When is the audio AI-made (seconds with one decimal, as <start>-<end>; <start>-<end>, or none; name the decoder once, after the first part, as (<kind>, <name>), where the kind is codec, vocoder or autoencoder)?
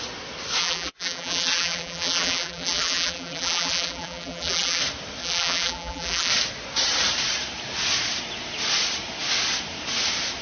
0.6-4.8 (vocoder, BigVGAN v2); 5.2-6.3